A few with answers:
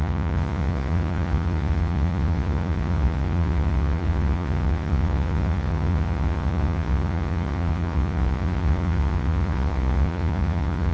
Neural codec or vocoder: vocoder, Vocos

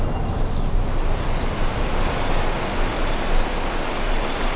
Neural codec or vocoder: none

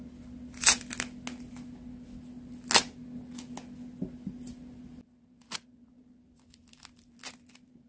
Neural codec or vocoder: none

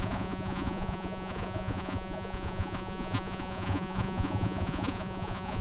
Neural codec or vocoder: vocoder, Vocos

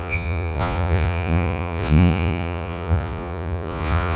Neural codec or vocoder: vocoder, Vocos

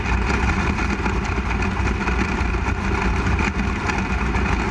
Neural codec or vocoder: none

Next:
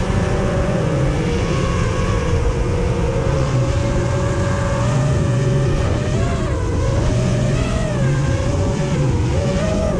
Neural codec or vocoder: vocoder, Vocos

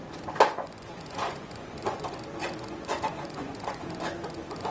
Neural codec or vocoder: vocoder, Vocos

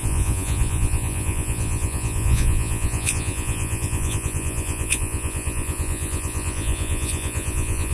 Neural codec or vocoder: vocoder, Vocos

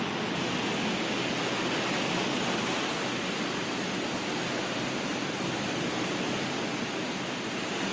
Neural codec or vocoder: none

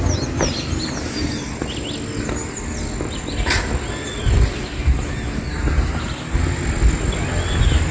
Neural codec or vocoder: none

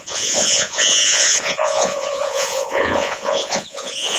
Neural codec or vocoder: vocoder, Vocos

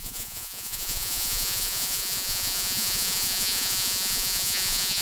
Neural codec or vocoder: vocoder, Vocos